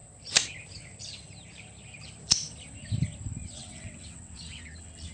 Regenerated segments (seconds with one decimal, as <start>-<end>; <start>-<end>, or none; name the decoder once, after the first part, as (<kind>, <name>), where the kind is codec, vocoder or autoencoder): 3.4-5.1 (vocoder, WaveNeXt)